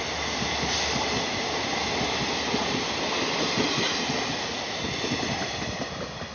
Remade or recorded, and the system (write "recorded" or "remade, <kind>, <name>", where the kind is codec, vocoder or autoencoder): recorded